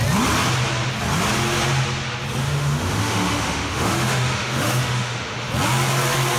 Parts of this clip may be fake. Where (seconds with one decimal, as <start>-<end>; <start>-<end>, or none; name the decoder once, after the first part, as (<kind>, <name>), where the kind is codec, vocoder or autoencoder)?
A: 2.4-5.5 (autoencoder, DAC-VAE)